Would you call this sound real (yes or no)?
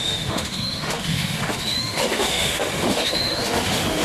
no